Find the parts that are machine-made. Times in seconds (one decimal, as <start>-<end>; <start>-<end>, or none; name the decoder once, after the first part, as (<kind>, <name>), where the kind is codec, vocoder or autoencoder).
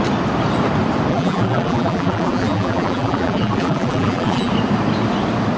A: 1.1-4.5 (vocoder, BigVGAN v2)